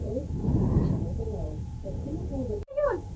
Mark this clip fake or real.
fake